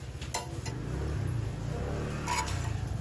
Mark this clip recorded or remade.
recorded